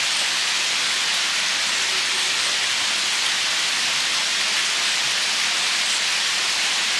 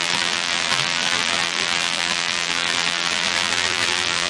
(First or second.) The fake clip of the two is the second